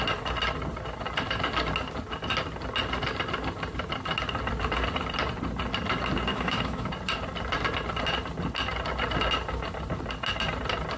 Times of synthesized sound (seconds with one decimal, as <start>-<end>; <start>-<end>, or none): 6.3-6.9